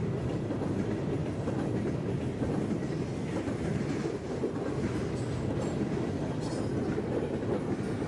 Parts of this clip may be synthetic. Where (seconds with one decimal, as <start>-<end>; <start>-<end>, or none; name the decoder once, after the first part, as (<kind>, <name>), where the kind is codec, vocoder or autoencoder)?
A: none